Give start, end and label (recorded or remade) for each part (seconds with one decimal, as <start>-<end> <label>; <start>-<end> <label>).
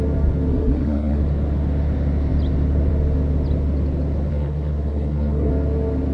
0.0-0.5 recorded; 0.5-1.2 remade; 1.2-4.3 recorded; 4.3-5.5 remade; 5.5-6.1 recorded